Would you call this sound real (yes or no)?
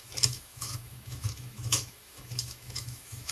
no